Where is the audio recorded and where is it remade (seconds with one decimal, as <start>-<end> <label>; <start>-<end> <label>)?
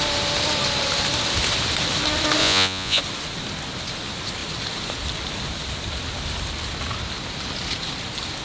0.0-2.4 recorded; 2.4-3.0 remade; 3.0-8.4 recorded